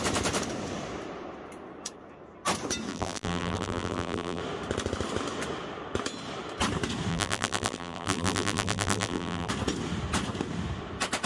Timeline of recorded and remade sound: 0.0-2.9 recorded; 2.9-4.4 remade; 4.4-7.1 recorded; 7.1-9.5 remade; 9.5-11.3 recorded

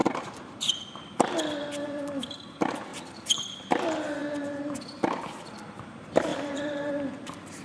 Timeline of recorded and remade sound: 0.0-0.8 remade; 0.8-2.9 recorded; 2.9-3.4 remade; 3.4-4.2 recorded; 4.2-4.8 remade; 4.8-6.3 recorded; 6.3-6.9 remade; 6.9-7.6 recorded